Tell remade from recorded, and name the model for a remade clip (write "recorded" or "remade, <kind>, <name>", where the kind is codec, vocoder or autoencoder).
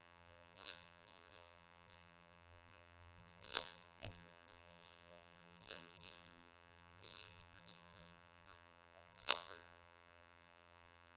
remade, vocoder, BigVGAN v2